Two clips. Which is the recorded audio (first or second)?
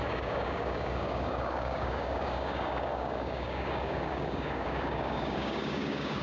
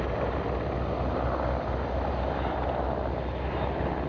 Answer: second